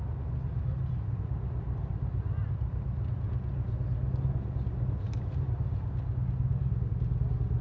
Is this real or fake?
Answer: real